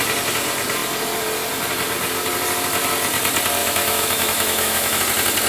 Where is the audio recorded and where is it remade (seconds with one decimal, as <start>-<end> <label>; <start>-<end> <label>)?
0.0-3.6 recorded; 3.6-5.0 remade; 5.0-5.5 recorded